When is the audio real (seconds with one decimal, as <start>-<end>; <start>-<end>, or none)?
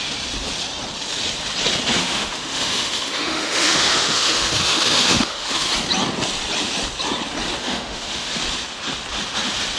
0.0-2.0; 5.7-7.6; 8.3-9.8